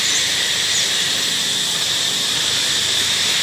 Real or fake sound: fake